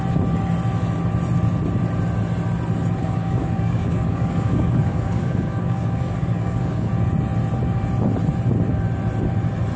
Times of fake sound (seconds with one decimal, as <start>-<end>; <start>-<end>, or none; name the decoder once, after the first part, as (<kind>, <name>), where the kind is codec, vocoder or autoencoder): 3.0-6.9 (codec, DAC)